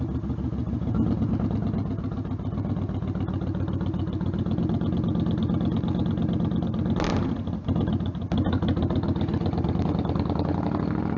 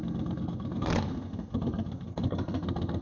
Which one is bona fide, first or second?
first